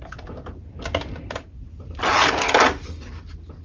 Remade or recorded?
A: recorded